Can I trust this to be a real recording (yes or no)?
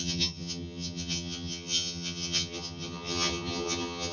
no